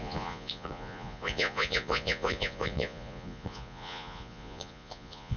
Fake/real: fake